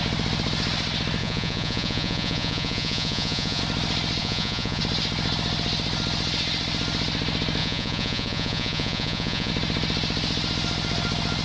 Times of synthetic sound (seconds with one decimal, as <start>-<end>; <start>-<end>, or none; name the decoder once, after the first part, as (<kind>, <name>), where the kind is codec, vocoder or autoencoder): 1.2-3.6 (vocoder, Vocos); 4.2-4.8; 7.6-9.5